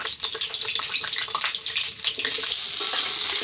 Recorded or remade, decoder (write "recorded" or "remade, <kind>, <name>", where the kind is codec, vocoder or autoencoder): recorded